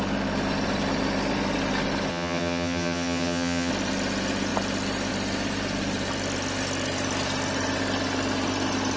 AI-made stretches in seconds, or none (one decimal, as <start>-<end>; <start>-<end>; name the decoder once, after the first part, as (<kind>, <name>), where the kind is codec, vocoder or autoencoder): 2.1-3.7 (vocoder, HiFi-GAN)